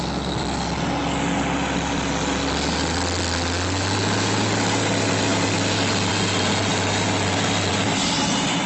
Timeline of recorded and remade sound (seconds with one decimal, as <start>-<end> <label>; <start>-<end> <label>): 0.0-8.7 recorded